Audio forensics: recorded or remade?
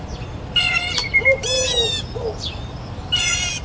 remade